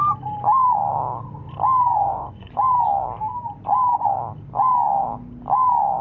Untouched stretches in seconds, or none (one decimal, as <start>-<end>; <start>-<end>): 0.0-1.8; 2.6-6.0